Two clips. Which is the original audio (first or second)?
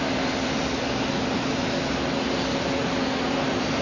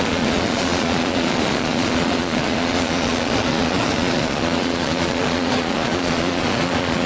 first